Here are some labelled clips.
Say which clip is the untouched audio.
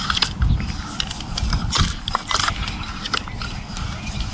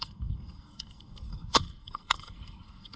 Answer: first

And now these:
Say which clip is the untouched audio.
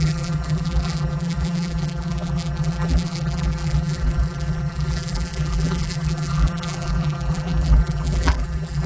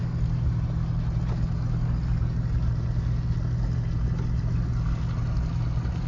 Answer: second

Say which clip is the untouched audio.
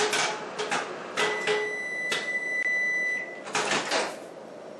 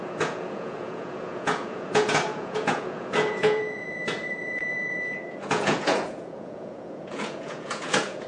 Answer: first